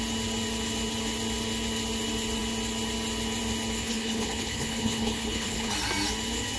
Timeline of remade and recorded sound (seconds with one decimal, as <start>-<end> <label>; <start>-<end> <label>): 0.0-3.8 recorded; 3.8-5.7 remade; 5.7-6.6 recorded